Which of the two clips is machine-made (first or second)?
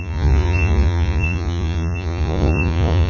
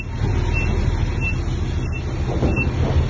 first